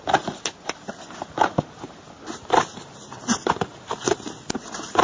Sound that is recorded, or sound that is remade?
recorded